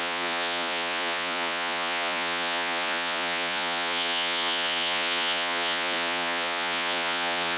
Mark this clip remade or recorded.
remade